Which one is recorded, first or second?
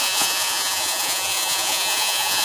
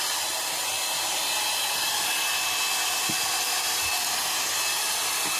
second